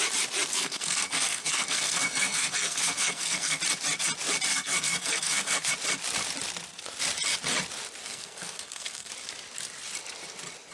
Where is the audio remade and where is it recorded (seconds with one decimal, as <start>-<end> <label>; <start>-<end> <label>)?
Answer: 0.0-0.5 recorded; 0.5-3.6 remade; 3.6-4.5 recorded; 4.5-5.7 remade; 5.7-8.0 recorded; 8.0-9.1 remade; 9.1-10.7 recorded